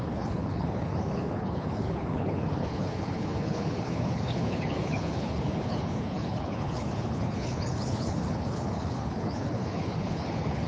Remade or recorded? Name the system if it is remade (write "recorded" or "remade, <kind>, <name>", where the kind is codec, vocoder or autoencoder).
remade, codec, HILCodec